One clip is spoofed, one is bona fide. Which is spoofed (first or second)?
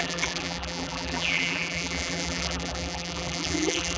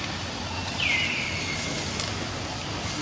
first